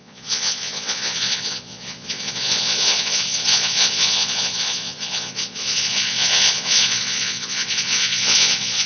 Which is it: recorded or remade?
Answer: remade